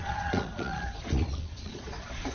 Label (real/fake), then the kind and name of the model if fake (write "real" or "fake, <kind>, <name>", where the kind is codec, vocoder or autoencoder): fake, vocoder, Vocos